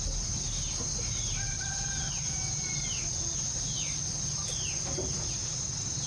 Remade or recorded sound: recorded